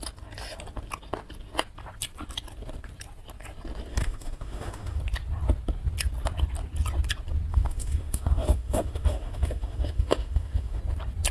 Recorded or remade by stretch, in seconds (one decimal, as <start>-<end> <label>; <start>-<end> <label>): 0.0-3.9 recorded; 3.9-5.0 remade; 5.0-7.5 recorded; 7.5-10.8 remade; 10.8-11.3 recorded